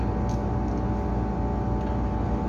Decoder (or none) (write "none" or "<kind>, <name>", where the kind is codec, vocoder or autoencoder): none